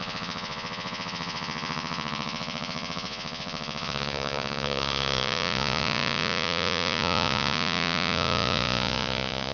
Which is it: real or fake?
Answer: fake